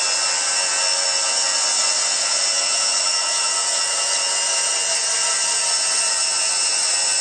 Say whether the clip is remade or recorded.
recorded